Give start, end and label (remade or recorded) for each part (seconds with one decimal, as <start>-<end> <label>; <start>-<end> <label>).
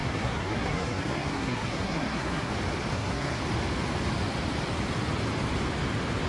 0.0-2.5 remade; 2.5-2.9 recorded; 2.9-3.4 remade; 3.4-6.3 recorded